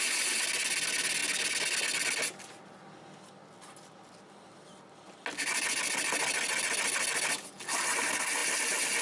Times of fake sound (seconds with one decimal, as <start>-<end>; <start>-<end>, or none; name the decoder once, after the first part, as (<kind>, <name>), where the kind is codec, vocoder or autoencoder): none